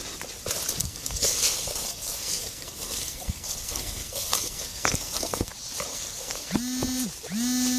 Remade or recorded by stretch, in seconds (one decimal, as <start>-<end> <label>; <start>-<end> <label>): 0.0-0.8 recorded; 0.8-5.5 remade; 5.5-5.9 recorded; 5.9-6.5 remade; 6.5-7.8 recorded